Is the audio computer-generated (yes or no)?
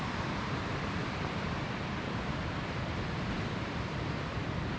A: yes